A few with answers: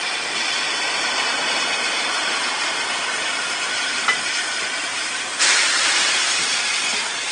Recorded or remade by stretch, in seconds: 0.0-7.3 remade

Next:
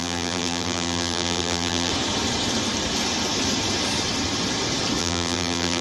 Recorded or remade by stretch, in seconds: 0.0-1.9 remade; 1.9-5.0 recorded; 5.0-5.8 remade

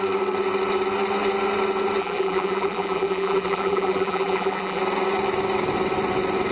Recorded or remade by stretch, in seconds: 0.0-2.0 recorded; 2.0-4.8 remade; 4.8-6.5 recorded

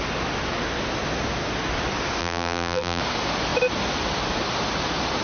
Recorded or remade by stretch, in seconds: 0.0-2.2 recorded; 2.2-3.0 remade; 3.0-5.2 recorded

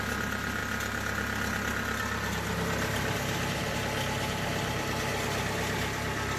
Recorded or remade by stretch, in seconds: 0.0-6.4 recorded

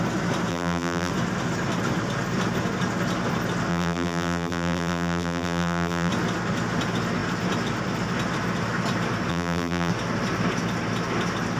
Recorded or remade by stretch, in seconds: 0.0-0.5 recorded; 0.5-1.1 remade; 1.1-3.7 recorded; 3.7-6.1 remade; 6.1-9.3 recorded; 9.3-9.9 remade; 9.9-11.6 recorded